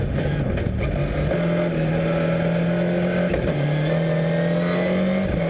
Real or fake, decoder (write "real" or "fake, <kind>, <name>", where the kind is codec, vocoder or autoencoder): real